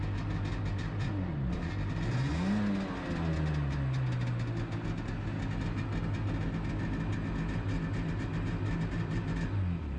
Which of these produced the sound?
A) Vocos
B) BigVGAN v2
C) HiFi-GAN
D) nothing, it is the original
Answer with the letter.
D